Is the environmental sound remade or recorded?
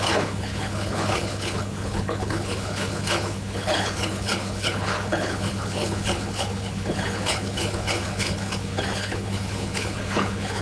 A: remade